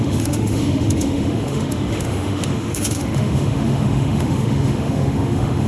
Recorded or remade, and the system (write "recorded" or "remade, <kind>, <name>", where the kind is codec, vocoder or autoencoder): remade, autoencoder, DAC-VAE